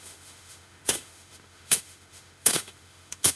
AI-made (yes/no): yes